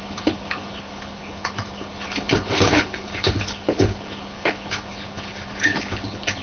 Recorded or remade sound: remade